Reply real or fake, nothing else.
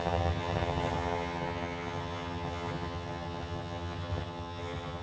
fake